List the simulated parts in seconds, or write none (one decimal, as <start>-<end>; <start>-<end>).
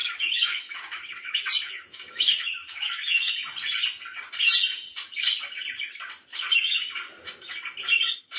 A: 0.0-3.3; 6.3-6.9